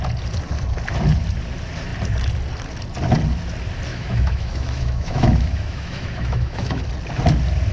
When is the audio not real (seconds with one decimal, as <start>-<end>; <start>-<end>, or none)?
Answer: 3.9-6.8